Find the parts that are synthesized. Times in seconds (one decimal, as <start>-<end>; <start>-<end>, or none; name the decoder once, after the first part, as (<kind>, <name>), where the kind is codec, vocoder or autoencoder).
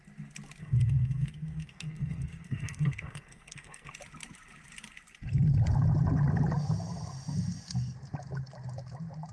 0.6-3.9 (codec, SNAC)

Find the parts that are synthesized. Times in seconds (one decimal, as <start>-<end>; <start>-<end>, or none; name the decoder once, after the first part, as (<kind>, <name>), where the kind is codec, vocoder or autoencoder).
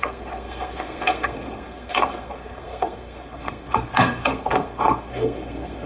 0.0-5.9 (codec, SNAC)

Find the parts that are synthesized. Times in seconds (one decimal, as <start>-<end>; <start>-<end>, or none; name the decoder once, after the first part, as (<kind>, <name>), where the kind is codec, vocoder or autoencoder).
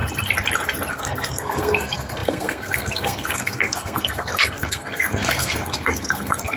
0.9-6.6 (codec, SNAC)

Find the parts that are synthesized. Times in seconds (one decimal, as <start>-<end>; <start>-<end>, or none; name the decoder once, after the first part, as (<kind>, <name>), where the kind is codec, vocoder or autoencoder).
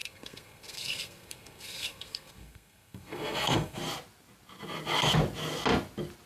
0.0-3.8 (codec, SNAC)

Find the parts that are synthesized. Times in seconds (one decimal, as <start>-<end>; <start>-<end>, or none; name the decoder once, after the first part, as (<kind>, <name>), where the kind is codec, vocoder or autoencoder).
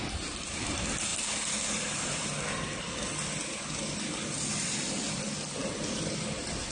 none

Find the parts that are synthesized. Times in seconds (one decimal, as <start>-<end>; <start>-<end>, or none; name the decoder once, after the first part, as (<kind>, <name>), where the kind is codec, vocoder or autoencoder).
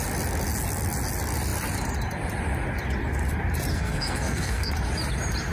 3.7-4.7 (codec, SNAC)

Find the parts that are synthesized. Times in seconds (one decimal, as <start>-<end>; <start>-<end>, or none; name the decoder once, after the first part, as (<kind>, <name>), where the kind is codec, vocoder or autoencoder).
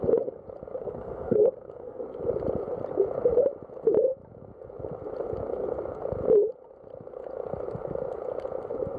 0.8-2.0 (codec, SNAC)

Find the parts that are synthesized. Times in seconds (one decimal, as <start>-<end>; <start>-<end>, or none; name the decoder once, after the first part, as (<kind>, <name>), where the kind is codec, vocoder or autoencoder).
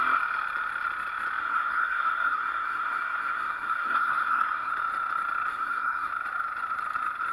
1.4-4.7 (codec, SNAC); 5.5-6.1